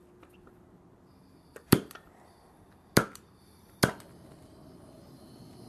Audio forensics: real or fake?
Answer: real